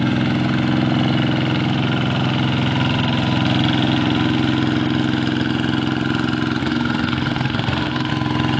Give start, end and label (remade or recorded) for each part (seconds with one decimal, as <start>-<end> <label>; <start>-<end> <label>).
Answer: 0.0-6.6 recorded; 6.6-8.1 remade; 8.1-8.6 recorded